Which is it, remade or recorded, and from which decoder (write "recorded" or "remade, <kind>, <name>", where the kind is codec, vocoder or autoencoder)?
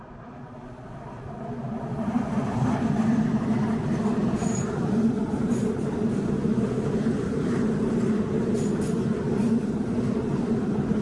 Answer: recorded